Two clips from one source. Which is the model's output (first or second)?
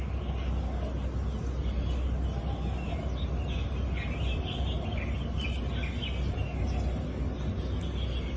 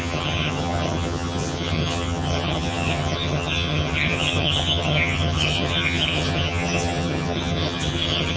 second